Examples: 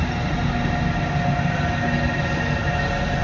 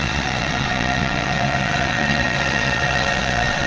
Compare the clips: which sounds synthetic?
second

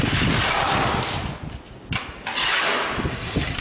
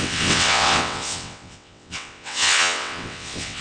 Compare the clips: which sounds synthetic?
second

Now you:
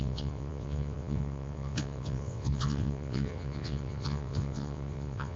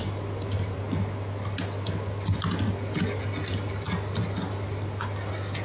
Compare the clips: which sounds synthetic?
first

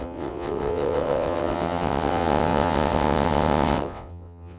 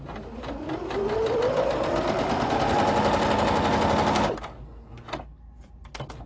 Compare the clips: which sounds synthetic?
first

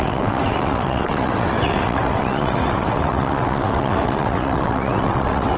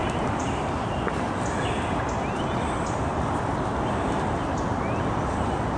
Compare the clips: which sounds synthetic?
first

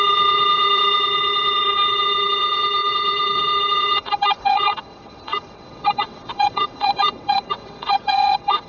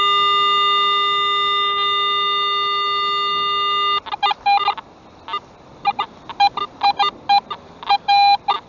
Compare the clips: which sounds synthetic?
first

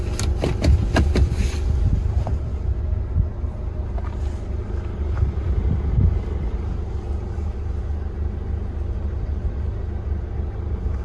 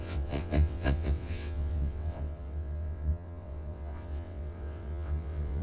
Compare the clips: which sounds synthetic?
second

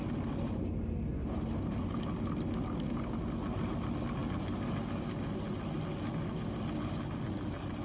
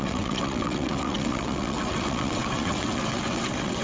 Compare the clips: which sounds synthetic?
second